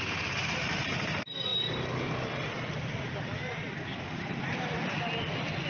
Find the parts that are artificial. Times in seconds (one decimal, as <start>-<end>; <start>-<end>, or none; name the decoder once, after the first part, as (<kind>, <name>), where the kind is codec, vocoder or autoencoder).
none